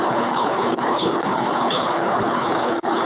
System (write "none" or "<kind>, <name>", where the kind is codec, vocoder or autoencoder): codec, HILCodec